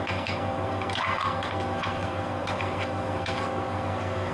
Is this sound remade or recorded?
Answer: remade